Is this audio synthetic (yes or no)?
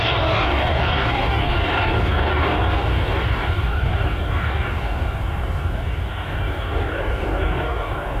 yes